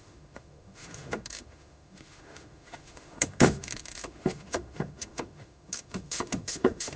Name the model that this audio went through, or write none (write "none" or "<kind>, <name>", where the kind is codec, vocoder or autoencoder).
autoencoder, DAC-VAE